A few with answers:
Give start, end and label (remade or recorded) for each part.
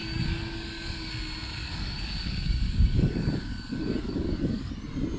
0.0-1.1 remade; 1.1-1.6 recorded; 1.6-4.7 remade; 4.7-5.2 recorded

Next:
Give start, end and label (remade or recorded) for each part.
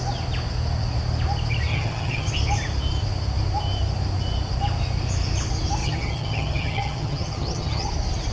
0.0-1.7 recorded; 1.7-2.3 remade; 2.3-5.8 recorded; 5.8-7.9 remade; 7.9-8.3 recorded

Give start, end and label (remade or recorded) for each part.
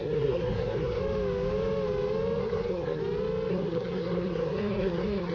0.0-1.0 remade; 1.0-2.4 recorded; 2.4-3.0 remade; 3.0-3.5 recorded; 3.5-5.3 remade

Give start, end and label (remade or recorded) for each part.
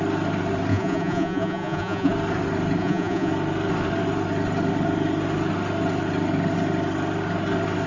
0.0-0.7 recorded; 0.7-2.1 remade; 2.1-2.8 recorded; 2.8-3.3 remade; 3.3-7.9 recorded